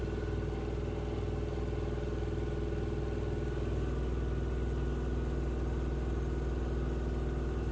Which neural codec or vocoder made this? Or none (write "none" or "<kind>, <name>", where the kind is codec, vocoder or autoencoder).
none